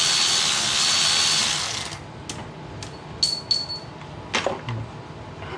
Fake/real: real